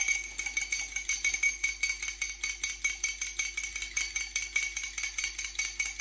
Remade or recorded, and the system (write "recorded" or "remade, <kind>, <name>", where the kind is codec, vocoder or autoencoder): recorded